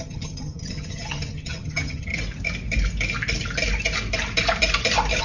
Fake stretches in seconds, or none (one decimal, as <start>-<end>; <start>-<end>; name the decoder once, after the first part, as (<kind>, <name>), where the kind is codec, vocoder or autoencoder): 0.0-2.1 (vocoder, HiFi-GAN)